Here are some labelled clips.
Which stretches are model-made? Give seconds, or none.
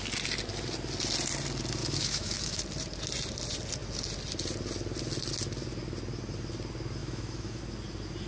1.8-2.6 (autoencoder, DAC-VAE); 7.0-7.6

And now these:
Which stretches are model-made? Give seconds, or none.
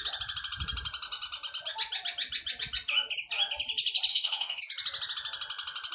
4.1-4.6 (autoencoder, DAC-VAE)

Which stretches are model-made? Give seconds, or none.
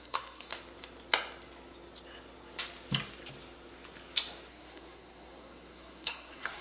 0.0-0.5 (codec, SNAC); 4.5-6.6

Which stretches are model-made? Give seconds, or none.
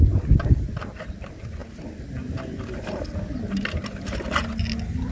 none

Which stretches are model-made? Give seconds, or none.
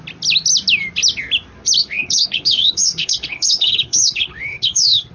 1.8-5.1 (codec, HILCodec)